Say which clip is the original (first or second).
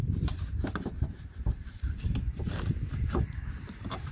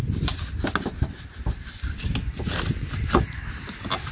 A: second